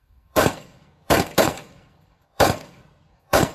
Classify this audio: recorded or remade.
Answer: remade